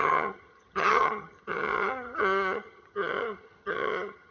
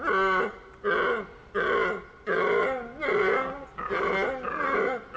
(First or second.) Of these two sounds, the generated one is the first